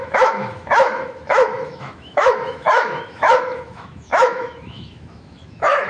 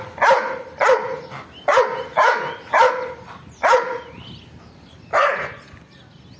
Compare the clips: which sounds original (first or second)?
second